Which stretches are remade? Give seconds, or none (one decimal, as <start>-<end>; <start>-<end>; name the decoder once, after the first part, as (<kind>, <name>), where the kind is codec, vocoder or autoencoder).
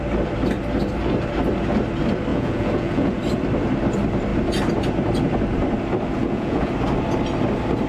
2.3-3.2 (vocoder, Vocos); 6.2-6.7